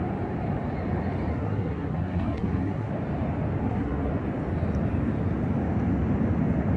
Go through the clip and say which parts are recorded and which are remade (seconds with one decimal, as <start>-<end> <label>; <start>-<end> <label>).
0.0-1.3 recorded; 1.3-2.9 remade; 2.9-3.6 recorded; 3.6-4.1 remade; 4.1-6.8 recorded

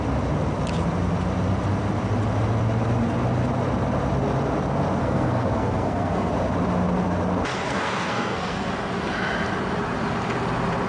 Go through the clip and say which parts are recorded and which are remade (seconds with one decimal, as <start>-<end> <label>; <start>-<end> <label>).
0.0-5.0 recorded; 5.0-6.3 remade; 6.3-7.5 recorded; 7.5-8.7 remade; 8.7-10.9 recorded

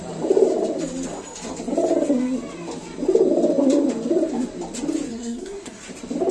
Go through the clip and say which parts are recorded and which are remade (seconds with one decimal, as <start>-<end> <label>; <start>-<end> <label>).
0.0-5.1 recorded; 5.1-5.8 remade; 5.8-6.3 recorded

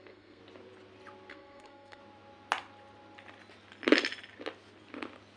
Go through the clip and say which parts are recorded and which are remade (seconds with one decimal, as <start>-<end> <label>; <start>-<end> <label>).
0.0-0.4 remade; 0.4-1.3 recorded; 1.3-2.0 remade; 2.0-5.4 recorded

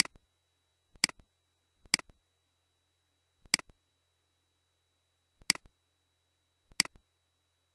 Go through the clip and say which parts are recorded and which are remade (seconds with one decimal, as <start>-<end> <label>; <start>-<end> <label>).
0.0-7.7 recorded

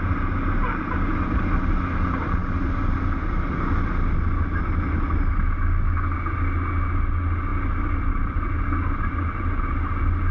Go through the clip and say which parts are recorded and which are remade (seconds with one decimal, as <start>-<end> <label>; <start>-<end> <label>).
0.0-10.3 recorded

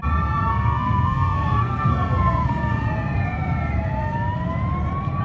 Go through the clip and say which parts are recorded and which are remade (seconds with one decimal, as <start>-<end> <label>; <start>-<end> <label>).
0.0-0.5 recorded; 0.5-2.7 remade; 2.7-5.2 recorded

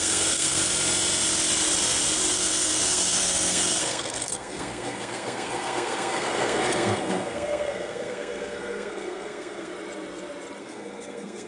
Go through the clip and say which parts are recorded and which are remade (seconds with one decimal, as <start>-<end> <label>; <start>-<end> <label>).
0.0-0.6 remade; 0.6-2.3 recorded; 2.3-9.7 remade; 9.7-10.6 recorded; 10.6-11.5 remade